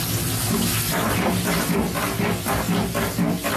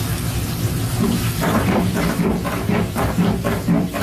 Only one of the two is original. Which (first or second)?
first